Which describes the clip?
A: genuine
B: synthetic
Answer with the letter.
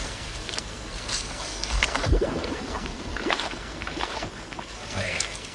B